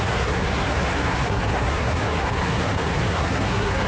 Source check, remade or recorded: remade